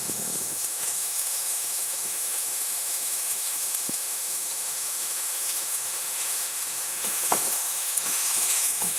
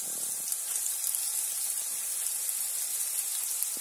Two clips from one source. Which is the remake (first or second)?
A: first